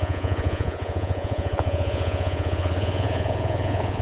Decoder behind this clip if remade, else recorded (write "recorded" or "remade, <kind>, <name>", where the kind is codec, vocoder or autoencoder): remade, vocoder, Vocos